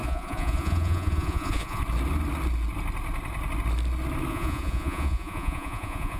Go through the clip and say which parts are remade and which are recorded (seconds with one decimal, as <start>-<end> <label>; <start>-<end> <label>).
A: 0.0-1.8 remade; 1.8-4.3 recorded; 4.3-6.2 remade